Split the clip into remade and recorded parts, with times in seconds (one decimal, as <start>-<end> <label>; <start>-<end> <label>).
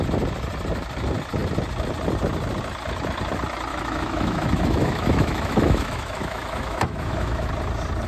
0.0-3.7 recorded; 3.7-7.5 remade; 7.5-8.1 recorded